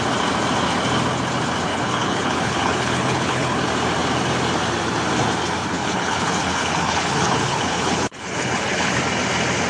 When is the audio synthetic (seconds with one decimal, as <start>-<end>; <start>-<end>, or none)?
1.7-3.6; 5.6-9.0

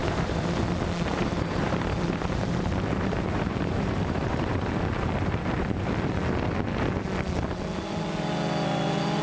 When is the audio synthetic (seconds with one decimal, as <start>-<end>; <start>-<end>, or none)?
0.0-0.6; 1.1-5.9

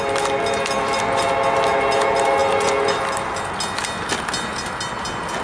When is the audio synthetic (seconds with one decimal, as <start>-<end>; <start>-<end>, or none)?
none

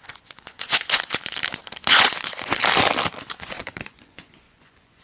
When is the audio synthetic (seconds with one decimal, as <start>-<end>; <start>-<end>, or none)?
0.0-1.4; 1.9-2.6; 3.3-5.0